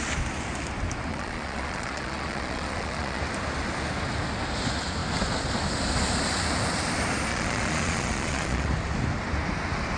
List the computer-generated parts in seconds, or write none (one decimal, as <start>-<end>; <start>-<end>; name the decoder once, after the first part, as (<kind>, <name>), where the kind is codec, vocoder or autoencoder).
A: 1.1-3.2 (vocoder, Vocos); 7.3-8.7

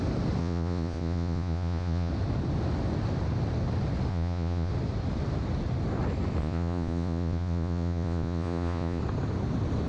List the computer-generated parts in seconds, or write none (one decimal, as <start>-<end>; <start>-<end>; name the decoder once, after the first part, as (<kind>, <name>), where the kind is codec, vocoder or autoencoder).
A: 0.4-2.1 (vocoder, Vocos); 4.1-4.7; 6.4-9.0

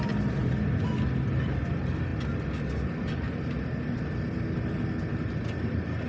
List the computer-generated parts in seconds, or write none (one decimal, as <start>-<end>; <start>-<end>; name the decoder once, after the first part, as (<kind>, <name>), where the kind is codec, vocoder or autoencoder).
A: none

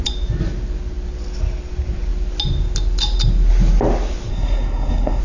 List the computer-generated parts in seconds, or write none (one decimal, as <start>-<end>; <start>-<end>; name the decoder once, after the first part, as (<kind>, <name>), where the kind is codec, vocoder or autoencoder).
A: 4.3-5.2 (codec, SNAC)

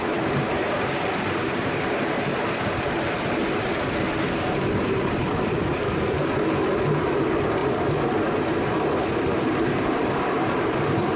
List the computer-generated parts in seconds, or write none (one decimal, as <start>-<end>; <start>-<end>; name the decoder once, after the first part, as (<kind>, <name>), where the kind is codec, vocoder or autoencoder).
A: 0.0-3.4 (vocoder, BigVGAN v2); 4.8-5.2; 7.0-7.6; 9.1-11.2

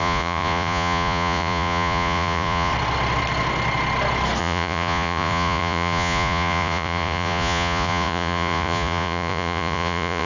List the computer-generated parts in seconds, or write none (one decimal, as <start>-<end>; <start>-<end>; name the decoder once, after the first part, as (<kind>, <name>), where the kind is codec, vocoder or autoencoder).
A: 0.0-2.7 (vocoder, Vocos); 4.4-10.2

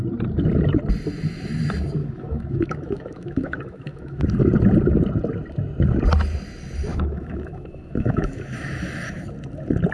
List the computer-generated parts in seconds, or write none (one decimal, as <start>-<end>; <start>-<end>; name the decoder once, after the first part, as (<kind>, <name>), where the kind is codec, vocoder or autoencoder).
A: 2.0-4.2 (autoencoder, DAC-VAE); 6.9-8.4

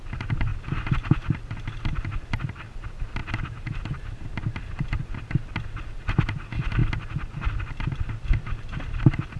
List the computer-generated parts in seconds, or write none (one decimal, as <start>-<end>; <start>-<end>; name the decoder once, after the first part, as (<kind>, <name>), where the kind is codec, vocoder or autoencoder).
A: none